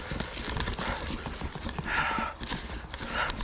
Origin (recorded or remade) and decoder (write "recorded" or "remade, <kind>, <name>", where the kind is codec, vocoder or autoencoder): recorded